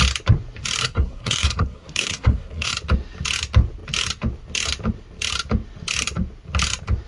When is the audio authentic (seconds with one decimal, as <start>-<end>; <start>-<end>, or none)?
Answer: 0.0-0.8; 2.7-7.1